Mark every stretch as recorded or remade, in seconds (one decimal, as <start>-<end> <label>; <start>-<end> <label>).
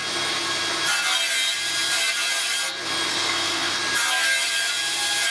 0.0-3.1 recorded; 3.1-3.8 remade; 3.8-5.3 recorded